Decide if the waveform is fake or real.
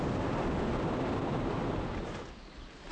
real